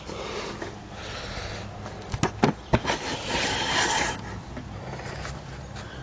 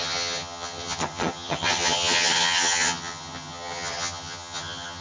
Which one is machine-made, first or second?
second